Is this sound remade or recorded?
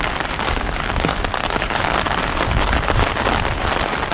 recorded